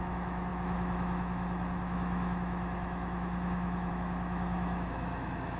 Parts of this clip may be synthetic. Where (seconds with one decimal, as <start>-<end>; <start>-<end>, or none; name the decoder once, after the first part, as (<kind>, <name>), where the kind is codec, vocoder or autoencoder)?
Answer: 0.0-5.6 (autoencoder, DAC-VAE)

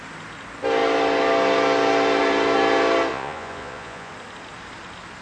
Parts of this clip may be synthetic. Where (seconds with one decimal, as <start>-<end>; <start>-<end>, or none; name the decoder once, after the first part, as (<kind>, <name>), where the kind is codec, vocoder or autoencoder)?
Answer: 3.1-4.1 (vocoder, Vocos)

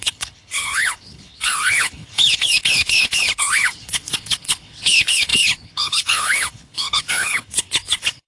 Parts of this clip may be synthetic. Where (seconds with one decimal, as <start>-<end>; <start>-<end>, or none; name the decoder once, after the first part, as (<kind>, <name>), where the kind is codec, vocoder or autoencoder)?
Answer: 0.0-8.3 (codec, HILCodec)

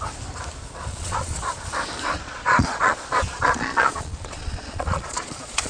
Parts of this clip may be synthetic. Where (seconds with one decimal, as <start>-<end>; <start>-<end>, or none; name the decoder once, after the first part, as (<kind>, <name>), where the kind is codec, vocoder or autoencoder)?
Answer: 0.9-1.4 (vocoder, Vocos); 2.1-5.7

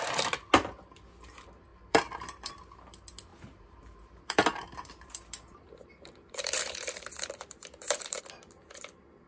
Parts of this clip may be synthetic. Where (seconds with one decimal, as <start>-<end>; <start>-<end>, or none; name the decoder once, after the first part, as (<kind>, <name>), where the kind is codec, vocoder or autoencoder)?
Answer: 1.7-2.5 (vocoder, BigVGAN v2); 3.3-8.2

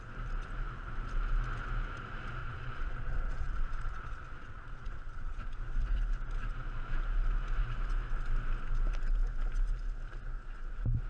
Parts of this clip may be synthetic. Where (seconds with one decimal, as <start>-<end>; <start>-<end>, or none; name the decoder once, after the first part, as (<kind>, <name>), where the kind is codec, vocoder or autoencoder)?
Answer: 2.4-5.6 (vocoder, Vocos)

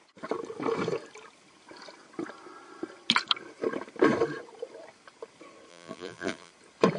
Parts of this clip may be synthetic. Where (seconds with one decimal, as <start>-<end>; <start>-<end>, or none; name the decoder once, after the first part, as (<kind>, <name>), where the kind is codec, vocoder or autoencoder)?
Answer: 5.7-6.5 (vocoder, BigVGAN v2)